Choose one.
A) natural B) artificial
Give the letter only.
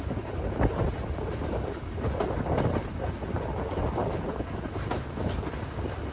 A